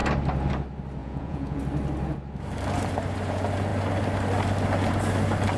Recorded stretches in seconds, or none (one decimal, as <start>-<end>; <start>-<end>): 0.0-1.0; 1.6-5.6